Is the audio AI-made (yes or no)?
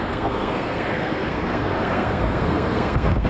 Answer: yes